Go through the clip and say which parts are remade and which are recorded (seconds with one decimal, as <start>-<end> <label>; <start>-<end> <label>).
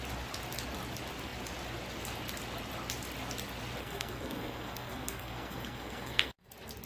0.0-3.8 recorded; 3.8-6.5 remade; 6.5-6.9 recorded